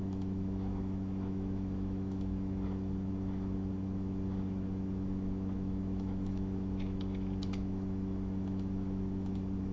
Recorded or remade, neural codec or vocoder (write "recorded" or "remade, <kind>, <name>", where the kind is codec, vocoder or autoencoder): remade, autoencoder, DAC-VAE